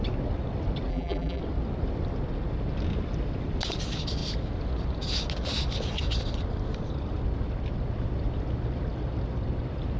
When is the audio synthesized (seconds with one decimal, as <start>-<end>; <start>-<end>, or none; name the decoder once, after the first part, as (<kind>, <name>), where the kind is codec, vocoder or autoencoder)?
0.9-1.4 (vocoder, BigVGAN v2)